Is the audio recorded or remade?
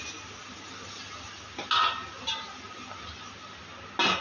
recorded